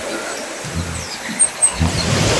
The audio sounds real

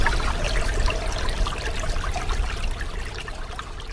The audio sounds real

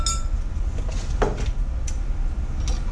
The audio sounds real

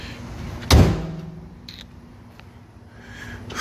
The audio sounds real